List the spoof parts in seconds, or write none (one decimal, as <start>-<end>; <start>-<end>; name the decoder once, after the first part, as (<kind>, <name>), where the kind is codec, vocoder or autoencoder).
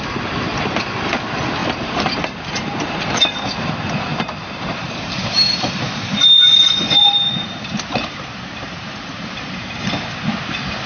1.6-2.7 (vocoder, BigVGAN v2); 4.1-5.7; 7.0-9.9